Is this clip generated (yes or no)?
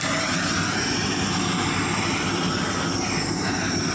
no